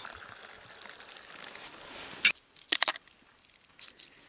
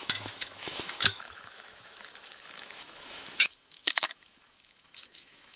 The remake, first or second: second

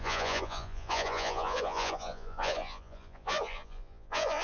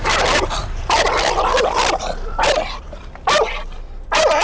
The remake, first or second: first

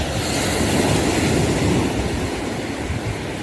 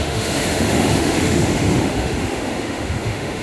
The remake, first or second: second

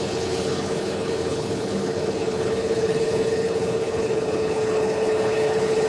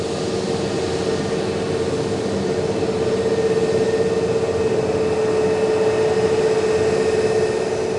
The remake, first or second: first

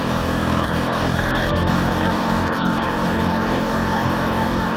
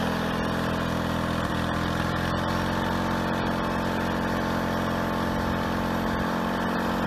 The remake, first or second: first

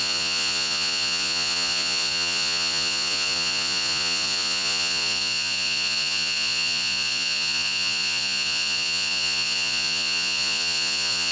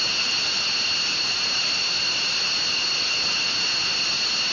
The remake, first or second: first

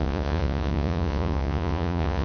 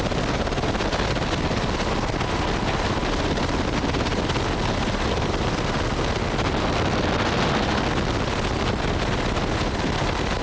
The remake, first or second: first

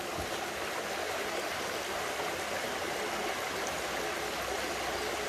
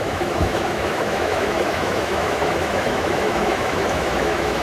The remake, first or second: second